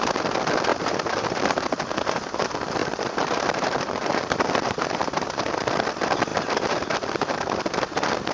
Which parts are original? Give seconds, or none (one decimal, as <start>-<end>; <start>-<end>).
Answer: 0.0-0.7; 1.8-2.8; 5.5-8.3